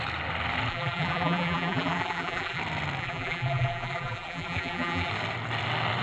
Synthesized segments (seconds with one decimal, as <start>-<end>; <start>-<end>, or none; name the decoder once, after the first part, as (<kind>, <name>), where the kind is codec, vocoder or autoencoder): 0.7-2.6 (vocoder, BigVGAN v2); 3.0-5.1